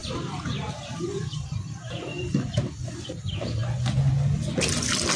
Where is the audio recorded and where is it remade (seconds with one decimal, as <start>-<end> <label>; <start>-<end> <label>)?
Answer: 0.0-3.1 remade; 3.1-3.6 recorded; 3.6-4.1 remade; 4.1-5.2 recorded